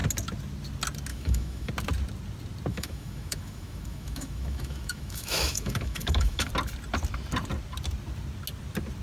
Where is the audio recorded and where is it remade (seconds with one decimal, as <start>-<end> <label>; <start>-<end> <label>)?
0.0-1.1 recorded; 1.1-1.7 remade; 1.7-2.7 recorded; 2.7-6.5 remade; 6.5-9.0 recorded